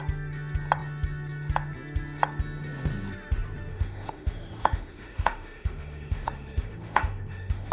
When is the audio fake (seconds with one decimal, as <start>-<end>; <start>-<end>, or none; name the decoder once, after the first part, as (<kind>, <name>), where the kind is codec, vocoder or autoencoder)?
3.7-7.7 (autoencoder, DAC-VAE)